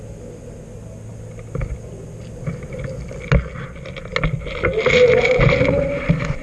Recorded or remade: recorded